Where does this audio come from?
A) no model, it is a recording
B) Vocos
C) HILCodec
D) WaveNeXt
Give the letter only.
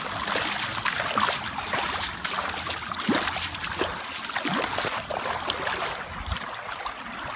A